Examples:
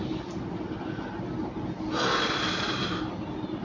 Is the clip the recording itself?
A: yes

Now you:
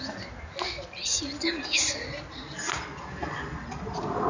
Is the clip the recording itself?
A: yes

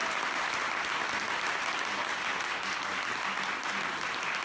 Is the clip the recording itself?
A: yes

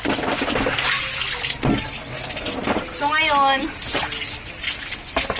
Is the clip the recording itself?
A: yes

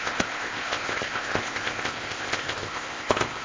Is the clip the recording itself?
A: no